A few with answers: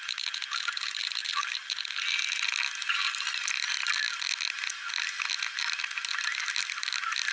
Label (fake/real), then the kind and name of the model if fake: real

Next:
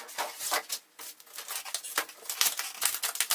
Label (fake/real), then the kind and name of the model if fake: real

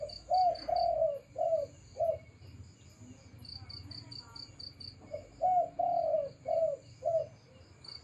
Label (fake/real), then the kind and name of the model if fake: real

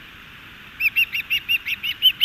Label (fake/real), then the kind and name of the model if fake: real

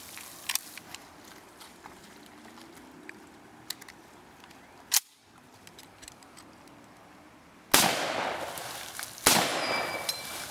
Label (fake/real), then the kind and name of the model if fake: real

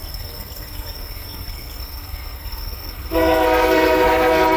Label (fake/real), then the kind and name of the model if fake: fake, codec, SNAC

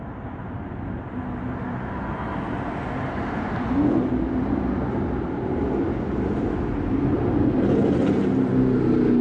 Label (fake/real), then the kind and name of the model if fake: real